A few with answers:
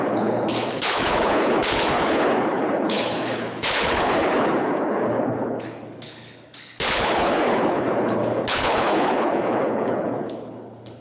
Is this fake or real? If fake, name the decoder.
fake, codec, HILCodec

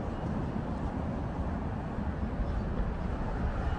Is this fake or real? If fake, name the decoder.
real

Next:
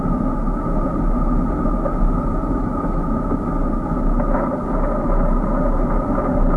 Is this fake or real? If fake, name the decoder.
real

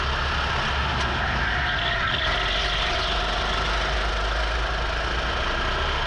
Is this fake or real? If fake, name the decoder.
real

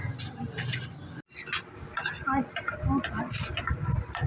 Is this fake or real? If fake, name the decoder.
real